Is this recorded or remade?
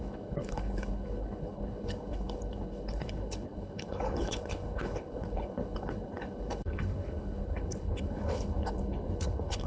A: remade